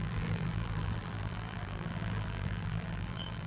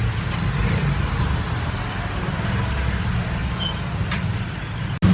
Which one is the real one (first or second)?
second